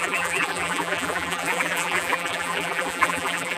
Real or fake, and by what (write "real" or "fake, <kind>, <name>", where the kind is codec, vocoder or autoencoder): fake, vocoder, BigVGAN v2